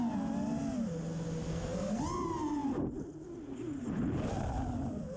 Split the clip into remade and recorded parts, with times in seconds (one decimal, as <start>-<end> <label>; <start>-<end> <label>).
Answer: 0.0-1.5 recorded; 1.5-2.0 remade; 2.0-5.2 recorded